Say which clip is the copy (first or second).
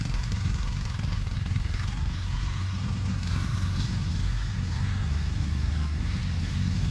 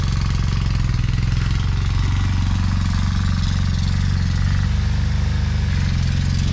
first